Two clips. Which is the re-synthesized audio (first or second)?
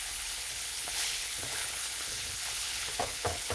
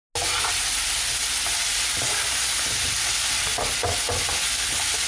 first